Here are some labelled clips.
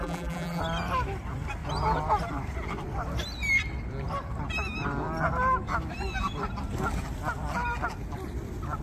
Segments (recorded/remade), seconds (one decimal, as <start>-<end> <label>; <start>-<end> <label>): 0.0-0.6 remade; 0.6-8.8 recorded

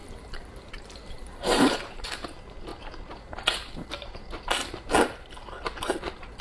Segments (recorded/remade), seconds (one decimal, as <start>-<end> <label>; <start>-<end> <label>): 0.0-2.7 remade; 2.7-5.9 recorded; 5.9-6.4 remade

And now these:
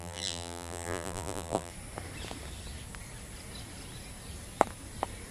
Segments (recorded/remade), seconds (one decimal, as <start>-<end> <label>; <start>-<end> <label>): 0.0-1.7 remade; 1.7-5.3 recorded

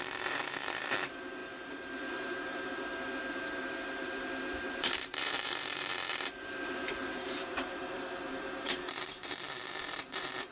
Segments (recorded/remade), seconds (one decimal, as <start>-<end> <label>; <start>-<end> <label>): 0.0-10.5 remade

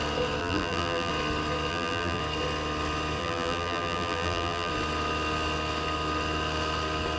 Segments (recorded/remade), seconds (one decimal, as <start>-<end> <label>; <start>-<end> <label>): 0.0-0.4 recorded; 0.4-1.1 remade; 1.1-1.7 recorded; 1.7-2.2 remade; 2.2-3.2 recorded; 3.2-4.7 remade; 4.7-7.2 recorded